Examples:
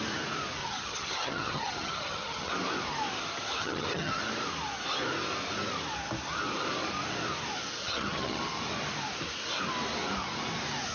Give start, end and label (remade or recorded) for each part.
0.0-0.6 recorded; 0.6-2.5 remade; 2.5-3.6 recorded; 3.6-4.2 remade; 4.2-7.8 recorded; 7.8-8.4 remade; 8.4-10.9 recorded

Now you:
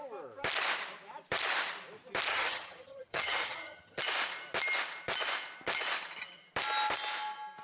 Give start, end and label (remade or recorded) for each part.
0.0-2.3 recorded; 2.3-4.0 remade; 4.0-7.6 recorded

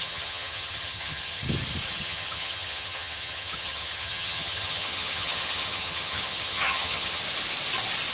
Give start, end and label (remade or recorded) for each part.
0.0-1.4 remade; 1.4-1.9 recorded; 1.9-7.2 remade; 7.2-8.1 recorded

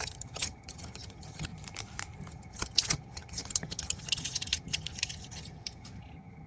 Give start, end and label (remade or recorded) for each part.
0.0-1.5 remade; 1.5-2.3 recorded; 2.3-6.5 remade

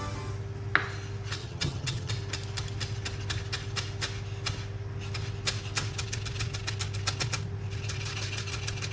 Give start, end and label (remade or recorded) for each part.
0.0-1.4 recorded; 1.4-2.1 remade; 2.1-8.9 recorded